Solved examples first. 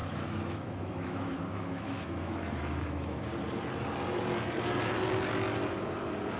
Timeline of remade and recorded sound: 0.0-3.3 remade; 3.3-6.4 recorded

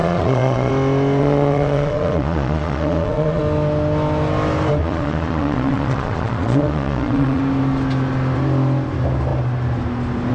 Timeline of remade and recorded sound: 0.0-0.7 remade; 0.7-1.2 recorded; 1.2-3.4 remade; 3.4-4.8 recorded; 4.8-7.4 remade; 7.4-10.3 recorded

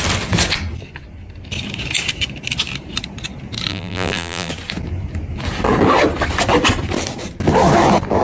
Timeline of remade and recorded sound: 0.0-3.7 recorded; 3.7-4.5 remade; 4.5-8.2 recorded

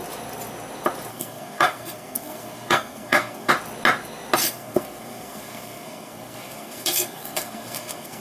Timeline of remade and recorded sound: 0.0-1.1 recorded; 1.1-3.5 remade; 3.5-4.4 recorded; 4.4-8.2 remade

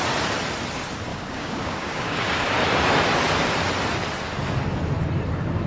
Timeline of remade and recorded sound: 0.0-1.1 recorded; 1.1-2.5 remade; 2.5-5.7 recorded